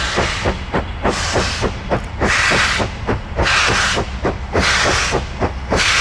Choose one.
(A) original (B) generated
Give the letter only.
A